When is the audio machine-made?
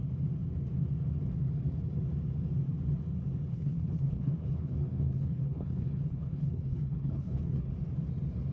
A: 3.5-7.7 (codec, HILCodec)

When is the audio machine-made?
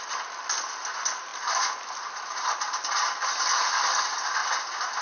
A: none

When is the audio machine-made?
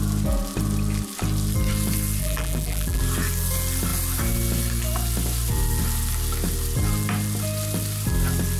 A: 2.2-3.0 (vocoder, BigVGAN v2)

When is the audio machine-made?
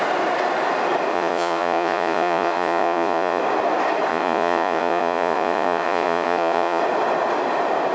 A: 1.1-3.4 (vocoder, Vocos); 4.1-6.8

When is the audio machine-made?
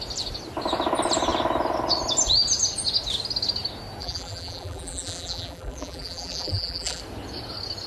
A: 4.0-7.0 (vocoder, BigVGAN v2)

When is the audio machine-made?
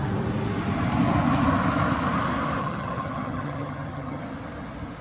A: 2.6-4.2 (vocoder, HiFi-GAN)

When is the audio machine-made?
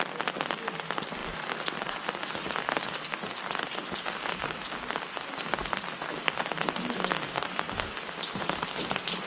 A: none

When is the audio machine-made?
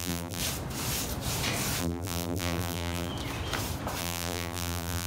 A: 0.0-0.4 (vocoder, BigVGAN v2); 1.8-3.1; 4.0-5.1